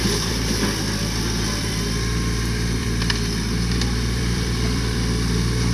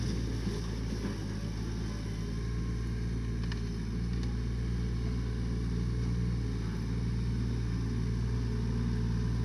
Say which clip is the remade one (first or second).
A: first